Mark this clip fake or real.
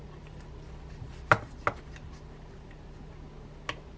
real